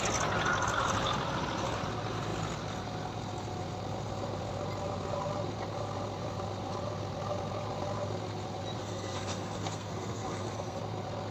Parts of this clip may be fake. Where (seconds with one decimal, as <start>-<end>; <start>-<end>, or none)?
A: 8.8-10.8